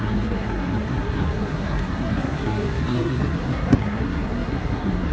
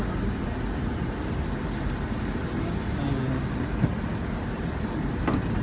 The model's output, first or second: first